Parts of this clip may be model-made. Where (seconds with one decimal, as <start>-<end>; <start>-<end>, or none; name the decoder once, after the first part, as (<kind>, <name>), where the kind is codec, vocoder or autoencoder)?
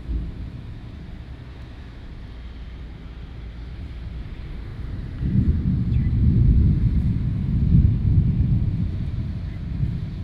1.5-2.1 (autoencoder, DAC-VAE)